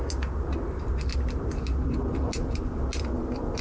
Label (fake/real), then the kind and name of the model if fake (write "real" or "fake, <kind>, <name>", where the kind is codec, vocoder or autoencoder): real